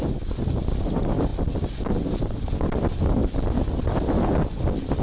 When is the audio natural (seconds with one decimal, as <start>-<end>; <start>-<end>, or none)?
0.0-5.0